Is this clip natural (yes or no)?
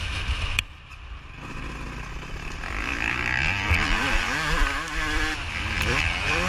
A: yes